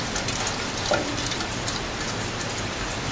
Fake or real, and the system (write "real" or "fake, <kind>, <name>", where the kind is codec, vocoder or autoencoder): real